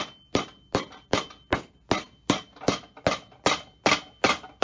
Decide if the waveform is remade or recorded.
recorded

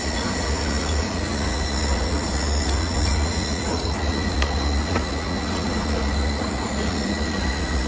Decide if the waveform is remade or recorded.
remade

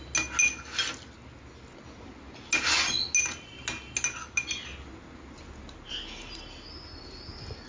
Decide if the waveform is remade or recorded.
recorded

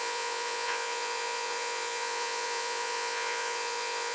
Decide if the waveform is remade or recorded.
remade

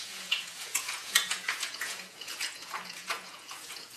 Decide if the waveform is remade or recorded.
remade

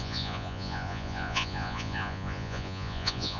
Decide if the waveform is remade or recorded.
remade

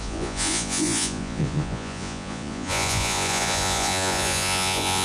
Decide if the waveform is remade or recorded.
remade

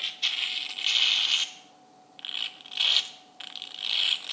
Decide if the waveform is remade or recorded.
recorded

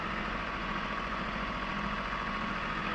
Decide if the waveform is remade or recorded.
remade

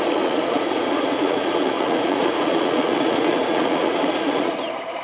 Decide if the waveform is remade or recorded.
remade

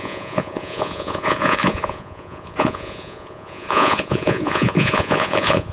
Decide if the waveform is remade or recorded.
remade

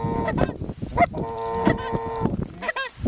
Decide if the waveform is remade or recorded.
recorded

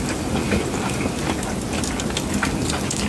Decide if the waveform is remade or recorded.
recorded